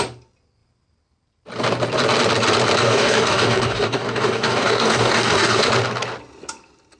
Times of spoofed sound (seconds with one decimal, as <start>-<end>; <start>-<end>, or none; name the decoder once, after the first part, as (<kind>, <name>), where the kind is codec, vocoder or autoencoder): 2.8-5.7 (codec, DAC)